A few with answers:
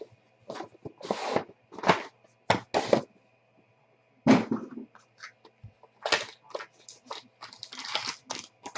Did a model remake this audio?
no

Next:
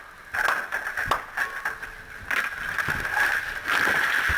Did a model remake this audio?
no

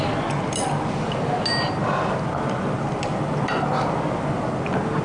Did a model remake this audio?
no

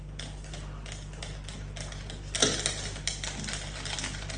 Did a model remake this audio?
no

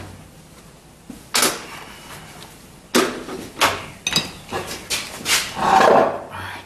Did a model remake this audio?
no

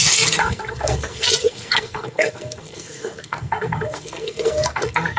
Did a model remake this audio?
yes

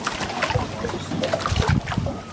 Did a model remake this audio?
no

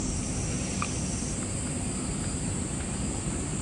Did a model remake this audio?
no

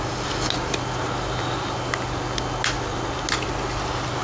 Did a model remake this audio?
no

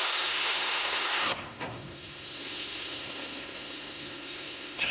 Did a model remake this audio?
yes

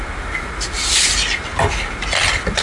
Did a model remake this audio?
no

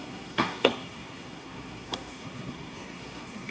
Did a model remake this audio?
yes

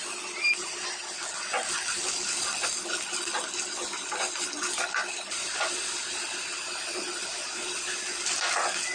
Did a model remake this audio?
no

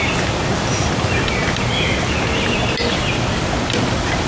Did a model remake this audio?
no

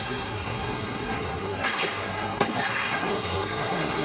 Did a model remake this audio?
yes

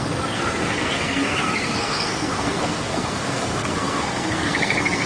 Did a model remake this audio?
yes